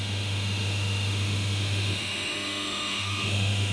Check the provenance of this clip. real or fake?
fake